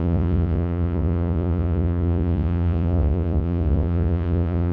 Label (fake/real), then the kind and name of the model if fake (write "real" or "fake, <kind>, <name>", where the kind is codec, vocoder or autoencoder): fake, vocoder, Vocos